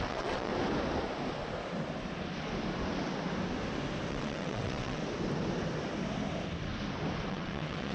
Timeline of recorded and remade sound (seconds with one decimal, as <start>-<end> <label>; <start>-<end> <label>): 0.0-0.5 remade; 0.5-4.1 recorded; 4.1-5.0 remade; 5.0-7.3 recorded; 7.3-7.9 remade